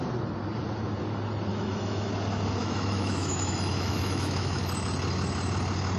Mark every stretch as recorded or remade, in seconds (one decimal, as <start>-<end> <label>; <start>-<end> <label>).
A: 0.0-1.5 recorded; 1.5-2.1 remade; 2.1-2.6 recorded; 2.6-4.6 remade; 4.6-6.0 recorded